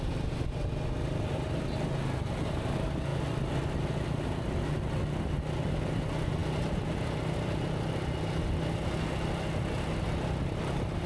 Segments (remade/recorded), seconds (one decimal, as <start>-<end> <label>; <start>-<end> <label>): 0.0-11.1 recorded